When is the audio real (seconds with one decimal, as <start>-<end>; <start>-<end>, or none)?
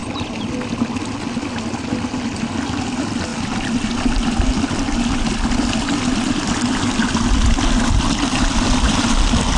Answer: 0.0-9.6